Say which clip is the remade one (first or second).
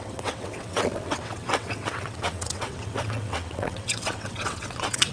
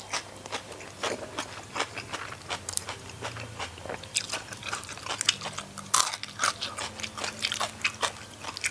first